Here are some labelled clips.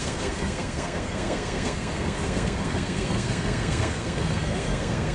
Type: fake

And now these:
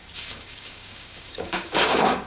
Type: fake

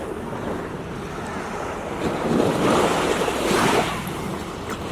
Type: real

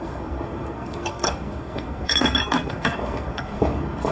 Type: fake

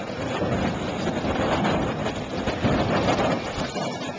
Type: real